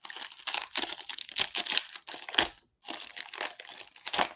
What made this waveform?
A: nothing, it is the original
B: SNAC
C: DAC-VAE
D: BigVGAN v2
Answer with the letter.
A